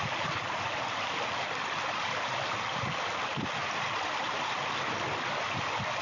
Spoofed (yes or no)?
no